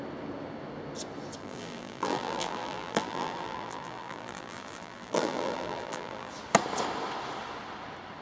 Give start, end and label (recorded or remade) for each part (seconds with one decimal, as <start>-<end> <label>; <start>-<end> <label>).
0.0-1.4 recorded; 1.4-6.3 remade; 6.3-8.2 recorded